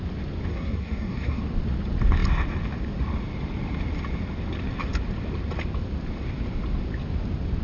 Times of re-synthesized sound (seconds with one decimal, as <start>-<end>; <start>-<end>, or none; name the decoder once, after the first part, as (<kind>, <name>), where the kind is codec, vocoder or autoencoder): 0.5-1.4 (codec, SNAC)